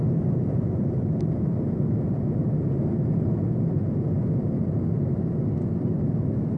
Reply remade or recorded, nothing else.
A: recorded